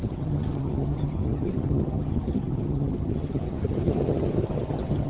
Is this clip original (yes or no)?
no